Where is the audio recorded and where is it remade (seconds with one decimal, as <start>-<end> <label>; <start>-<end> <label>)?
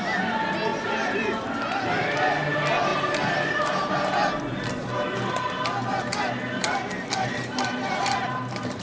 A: 0.0-2.9 recorded; 2.9-3.9 remade; 3.9-6.6 recorded; 6.6-8.8 remade